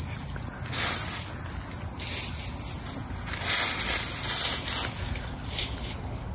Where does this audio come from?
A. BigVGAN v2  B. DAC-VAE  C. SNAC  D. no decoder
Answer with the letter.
D